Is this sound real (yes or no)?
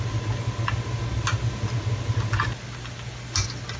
yes